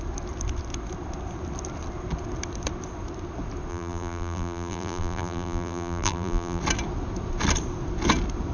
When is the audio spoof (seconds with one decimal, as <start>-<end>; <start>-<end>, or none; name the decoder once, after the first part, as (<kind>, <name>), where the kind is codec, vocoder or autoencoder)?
3.7-6.6 (vocoder, BigVGAN v2)